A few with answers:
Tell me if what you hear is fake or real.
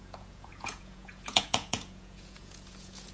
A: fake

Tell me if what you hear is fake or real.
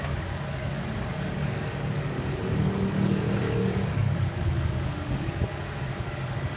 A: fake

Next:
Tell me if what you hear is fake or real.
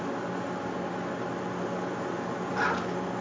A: real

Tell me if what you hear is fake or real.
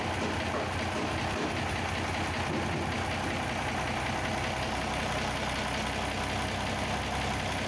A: real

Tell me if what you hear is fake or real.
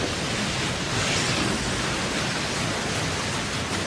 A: real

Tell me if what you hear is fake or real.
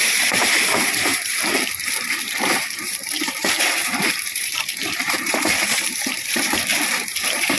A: fake